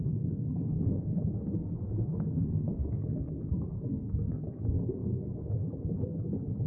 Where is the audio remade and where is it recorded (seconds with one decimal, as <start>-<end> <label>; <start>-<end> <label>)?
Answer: 0.0-6.7 remade